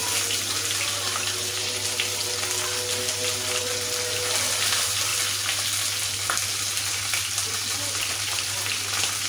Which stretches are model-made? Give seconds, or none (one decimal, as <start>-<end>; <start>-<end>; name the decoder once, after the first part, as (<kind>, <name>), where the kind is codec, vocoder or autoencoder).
none